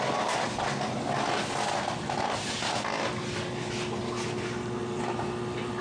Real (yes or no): yes